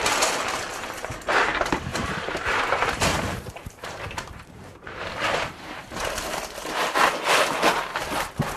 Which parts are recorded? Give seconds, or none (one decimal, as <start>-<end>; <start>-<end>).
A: 0.0-1.9; 2.6-3.1; 5.8-8.6